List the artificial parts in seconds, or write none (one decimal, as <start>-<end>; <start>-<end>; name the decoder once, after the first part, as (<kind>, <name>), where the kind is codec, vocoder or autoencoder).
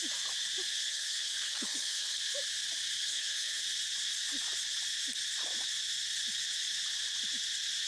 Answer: 0.7-2.2 (codec, HILCodec); 3.0-3.6